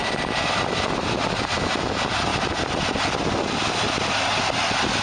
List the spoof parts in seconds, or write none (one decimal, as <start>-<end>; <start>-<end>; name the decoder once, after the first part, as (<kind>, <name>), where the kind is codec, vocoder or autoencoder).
0.0-0.8 (vocoder, BigVGAN v2); 2.3-3.0